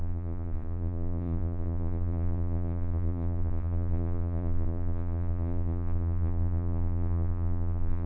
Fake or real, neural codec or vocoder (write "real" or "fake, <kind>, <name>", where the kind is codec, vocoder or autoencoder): fake, vocoder, Vocos